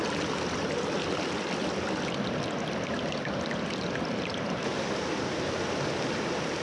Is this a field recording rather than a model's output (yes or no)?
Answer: yes